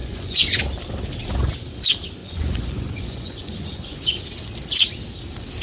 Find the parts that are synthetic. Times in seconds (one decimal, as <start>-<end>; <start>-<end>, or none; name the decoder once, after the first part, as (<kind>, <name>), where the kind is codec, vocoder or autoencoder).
0.0-0.6 (vocoder, Vocos); 2.2-4.2

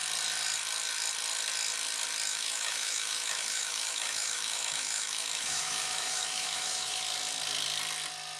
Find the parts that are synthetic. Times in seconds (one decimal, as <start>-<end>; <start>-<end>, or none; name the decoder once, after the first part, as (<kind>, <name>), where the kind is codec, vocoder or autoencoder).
2.3-7.0 (autoencoder, DAC-VAE)

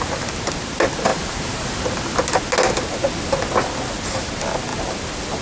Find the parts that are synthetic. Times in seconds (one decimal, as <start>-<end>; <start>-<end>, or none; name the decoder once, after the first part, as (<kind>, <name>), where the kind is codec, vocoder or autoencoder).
none

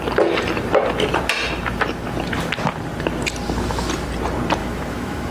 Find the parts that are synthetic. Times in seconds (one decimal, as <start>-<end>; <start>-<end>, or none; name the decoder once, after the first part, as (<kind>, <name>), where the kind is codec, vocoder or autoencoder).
4.6-5.3 (autoencoder, DAC-VAE)

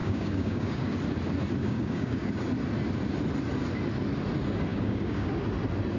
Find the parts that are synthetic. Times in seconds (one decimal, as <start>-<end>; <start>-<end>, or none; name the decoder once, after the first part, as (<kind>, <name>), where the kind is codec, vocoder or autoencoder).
0.0-0.9 (codec, DAC); 1.6-2.3; 4.7-5.3

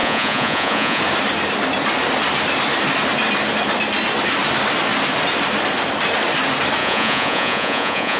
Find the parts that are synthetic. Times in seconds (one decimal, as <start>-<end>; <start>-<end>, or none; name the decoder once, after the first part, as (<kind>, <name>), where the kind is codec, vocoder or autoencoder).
0.0-1.0 (vocoder, Vocos); 6.8-8.2

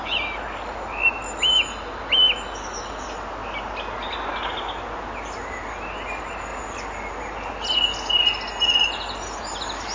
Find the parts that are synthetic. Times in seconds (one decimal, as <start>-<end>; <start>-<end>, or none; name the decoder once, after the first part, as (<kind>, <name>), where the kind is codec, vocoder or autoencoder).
none